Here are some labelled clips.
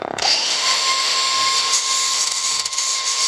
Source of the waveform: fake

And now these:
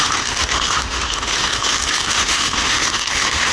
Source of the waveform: fake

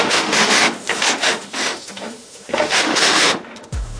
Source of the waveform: fake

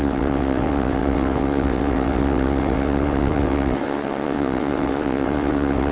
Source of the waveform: fake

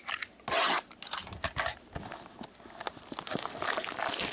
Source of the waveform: real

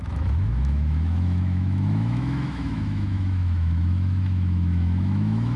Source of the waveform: fake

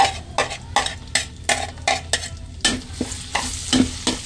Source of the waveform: real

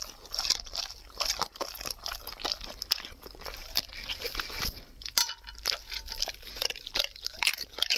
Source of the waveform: real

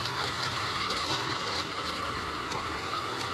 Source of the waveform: fake